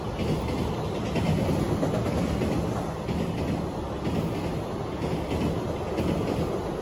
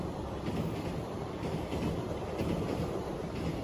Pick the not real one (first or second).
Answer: second